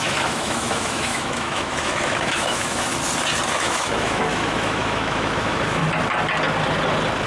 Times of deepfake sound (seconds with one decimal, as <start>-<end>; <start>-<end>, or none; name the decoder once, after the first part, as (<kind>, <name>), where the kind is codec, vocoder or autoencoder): 0.0-2.9 (autoencoder, DAC-VAE); 3.5-5.8